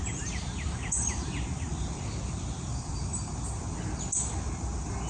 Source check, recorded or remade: recorded